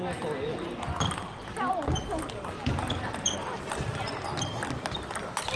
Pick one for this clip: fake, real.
real